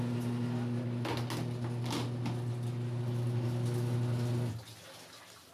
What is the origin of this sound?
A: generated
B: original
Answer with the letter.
B